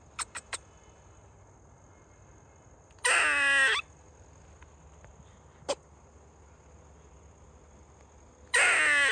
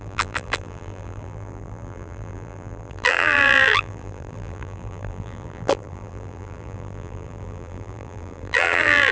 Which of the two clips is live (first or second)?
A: first